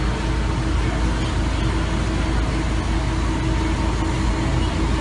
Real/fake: real